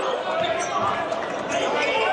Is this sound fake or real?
real